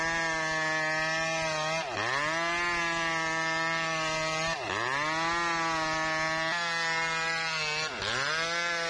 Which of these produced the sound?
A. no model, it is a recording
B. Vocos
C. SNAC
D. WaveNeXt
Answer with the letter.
A